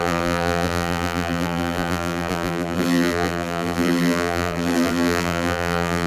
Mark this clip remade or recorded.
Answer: remade